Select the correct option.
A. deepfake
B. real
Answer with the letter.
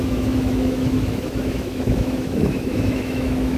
A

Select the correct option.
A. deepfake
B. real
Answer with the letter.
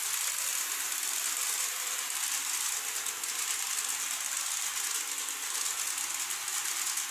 B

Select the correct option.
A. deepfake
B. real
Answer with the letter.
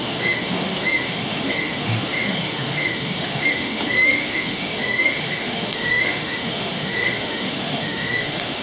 A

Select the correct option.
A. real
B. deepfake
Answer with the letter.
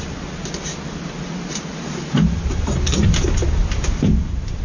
A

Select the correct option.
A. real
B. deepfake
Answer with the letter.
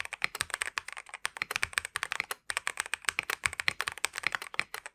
A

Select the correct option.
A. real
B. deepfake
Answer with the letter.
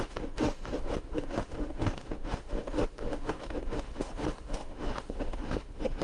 B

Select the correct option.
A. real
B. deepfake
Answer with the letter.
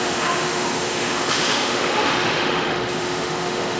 B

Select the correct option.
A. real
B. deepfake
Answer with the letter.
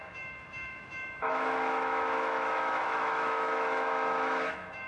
B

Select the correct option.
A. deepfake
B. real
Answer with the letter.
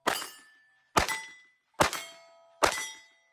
B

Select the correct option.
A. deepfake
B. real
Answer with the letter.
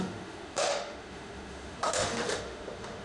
A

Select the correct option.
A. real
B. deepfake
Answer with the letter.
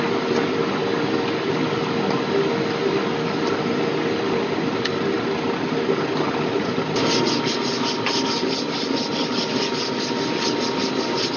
A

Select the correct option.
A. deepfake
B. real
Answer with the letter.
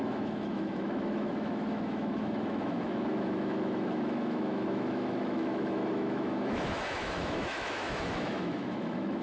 A